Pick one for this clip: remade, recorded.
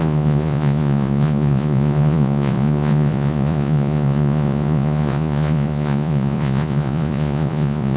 remade